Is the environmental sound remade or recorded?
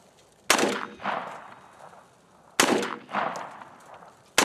recorded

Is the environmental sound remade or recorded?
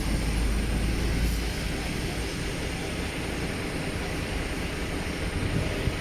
recorded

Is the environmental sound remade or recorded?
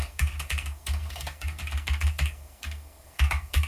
remade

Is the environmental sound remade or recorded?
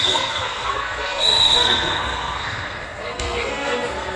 remade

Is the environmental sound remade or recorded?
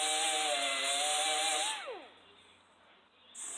recorded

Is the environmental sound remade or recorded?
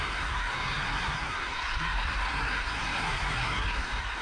remade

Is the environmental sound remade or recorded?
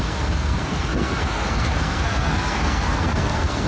remade